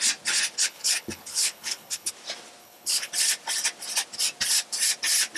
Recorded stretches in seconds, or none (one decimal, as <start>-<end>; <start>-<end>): 0.0-0.6; 2.1-2.6; 3.1-5.4